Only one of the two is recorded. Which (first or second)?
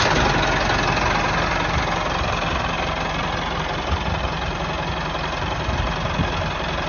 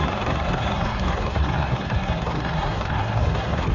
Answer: first